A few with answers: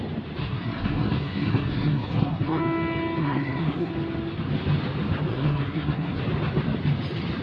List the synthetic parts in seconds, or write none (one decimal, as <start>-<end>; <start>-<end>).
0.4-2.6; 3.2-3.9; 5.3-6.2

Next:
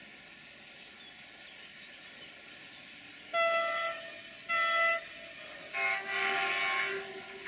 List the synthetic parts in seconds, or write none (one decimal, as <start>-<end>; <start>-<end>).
5.6-6.5

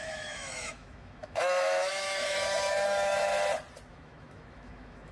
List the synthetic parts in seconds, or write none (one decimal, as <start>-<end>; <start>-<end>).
0.0-3.3; 3.9-5.1

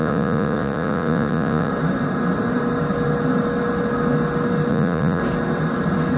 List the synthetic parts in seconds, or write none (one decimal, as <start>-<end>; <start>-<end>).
0.0-1.7; 4.7-5.2